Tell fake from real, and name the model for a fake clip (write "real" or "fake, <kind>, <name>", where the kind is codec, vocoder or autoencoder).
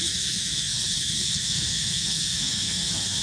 fake, codec, SNAC